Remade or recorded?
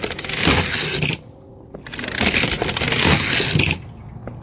recorded